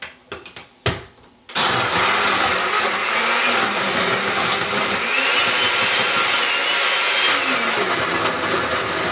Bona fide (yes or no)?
yes